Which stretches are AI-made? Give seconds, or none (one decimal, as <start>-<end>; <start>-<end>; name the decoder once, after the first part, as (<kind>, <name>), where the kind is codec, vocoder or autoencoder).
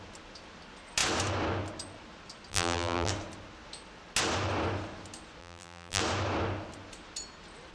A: 2.5-3.1 (vocoder, BigVGAN v2); 5.4-6.0